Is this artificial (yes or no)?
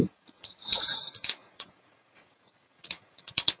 yes